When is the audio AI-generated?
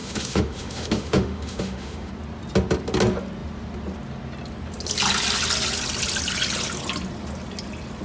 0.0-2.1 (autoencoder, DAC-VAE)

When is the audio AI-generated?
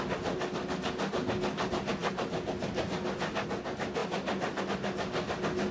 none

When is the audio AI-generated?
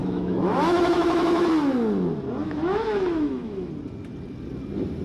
0.0-1.5 (autoencoder, DAC-VAE); 2.4-3.7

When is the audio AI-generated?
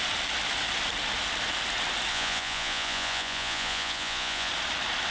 2.1-4.5 (vocoder, Vocos)